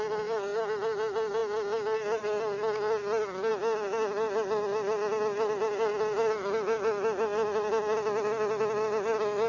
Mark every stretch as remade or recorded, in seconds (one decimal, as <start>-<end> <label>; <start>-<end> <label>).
0.0-9.5 recorded